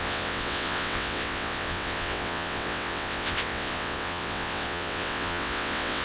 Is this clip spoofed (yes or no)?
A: yes